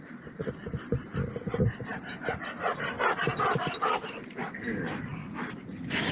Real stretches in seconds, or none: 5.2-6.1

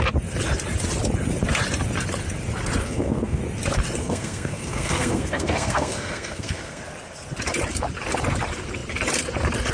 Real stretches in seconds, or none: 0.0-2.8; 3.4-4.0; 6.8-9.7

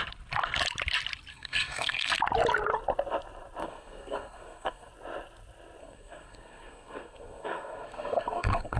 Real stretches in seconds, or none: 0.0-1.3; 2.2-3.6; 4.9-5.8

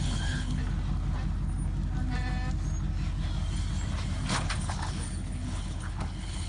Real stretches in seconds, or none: 0.6-4.3

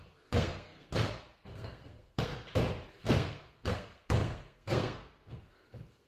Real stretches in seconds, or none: 2.3-2.9

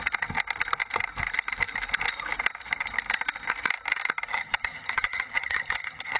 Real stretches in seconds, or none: 0.0-4.3

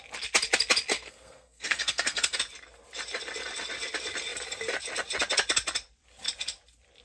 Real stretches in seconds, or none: 0.0-0.9; 2.4-7.0

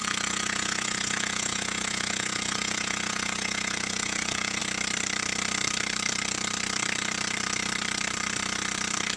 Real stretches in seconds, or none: 4.6-9.2